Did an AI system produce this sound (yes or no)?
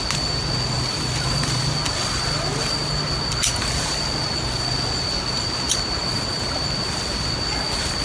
no